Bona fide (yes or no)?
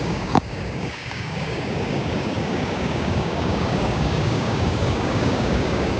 no